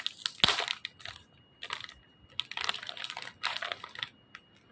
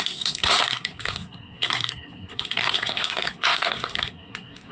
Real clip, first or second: first